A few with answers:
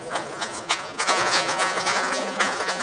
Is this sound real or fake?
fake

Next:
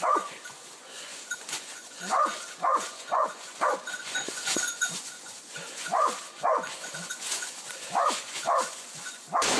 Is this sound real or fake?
fake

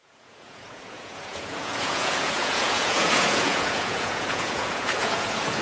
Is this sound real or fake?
fake